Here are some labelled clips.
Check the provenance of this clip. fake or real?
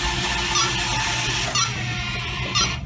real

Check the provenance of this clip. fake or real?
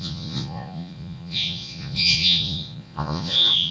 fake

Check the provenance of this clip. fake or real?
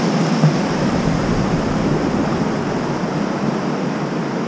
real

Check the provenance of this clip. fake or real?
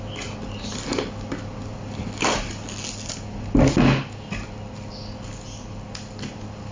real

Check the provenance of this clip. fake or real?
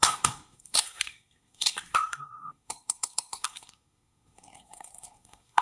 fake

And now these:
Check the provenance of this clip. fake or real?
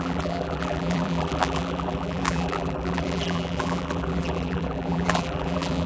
fake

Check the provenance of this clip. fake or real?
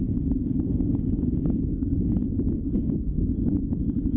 fake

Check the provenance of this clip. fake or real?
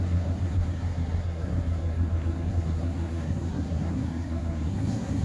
fake